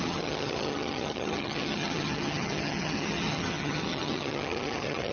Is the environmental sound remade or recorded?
remade